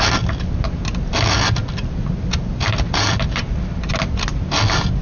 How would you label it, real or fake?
real